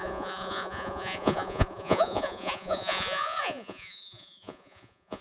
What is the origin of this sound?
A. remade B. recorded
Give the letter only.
A